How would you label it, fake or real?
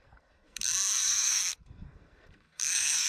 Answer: fake